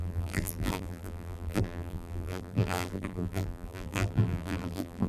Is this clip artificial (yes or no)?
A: yes